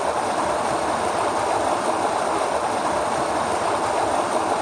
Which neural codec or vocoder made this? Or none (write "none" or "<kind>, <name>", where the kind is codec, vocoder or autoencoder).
none